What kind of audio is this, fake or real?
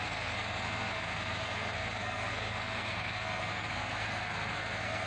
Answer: fake